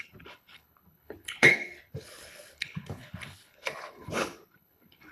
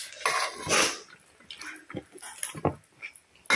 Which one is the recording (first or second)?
second